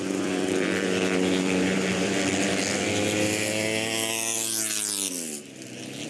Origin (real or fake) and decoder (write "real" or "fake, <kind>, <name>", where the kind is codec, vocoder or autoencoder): fake, vocoder, BigVGAN v2